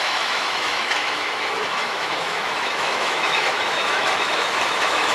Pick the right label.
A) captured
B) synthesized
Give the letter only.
B